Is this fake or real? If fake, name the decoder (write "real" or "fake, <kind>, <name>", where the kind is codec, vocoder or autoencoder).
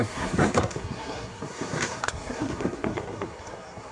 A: fake, codec, SNAC